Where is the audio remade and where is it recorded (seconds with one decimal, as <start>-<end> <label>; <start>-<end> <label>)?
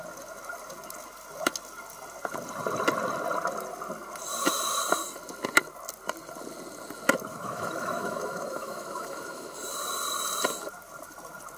0.0-7.3 recorded; 7.3-9.6 remade; 9.6-11.6 recorded